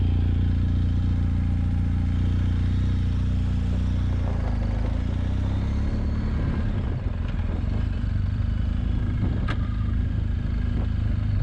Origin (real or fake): real